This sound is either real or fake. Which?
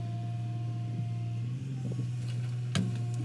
real